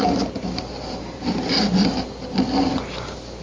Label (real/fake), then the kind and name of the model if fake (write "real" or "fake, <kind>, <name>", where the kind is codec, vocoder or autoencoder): real